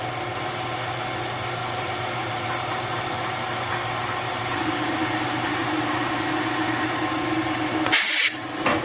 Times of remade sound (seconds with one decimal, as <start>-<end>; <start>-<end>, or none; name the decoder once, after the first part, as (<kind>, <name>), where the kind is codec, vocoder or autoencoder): 1.6-6.3 (vocoder, BigVGAN v2)